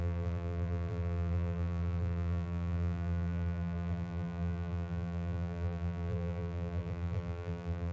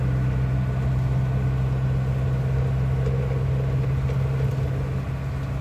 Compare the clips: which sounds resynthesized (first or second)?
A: first